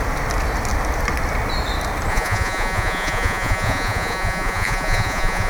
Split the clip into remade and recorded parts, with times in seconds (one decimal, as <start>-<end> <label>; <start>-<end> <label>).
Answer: 0.0-2.1 recorded; 2.1-5.5 remade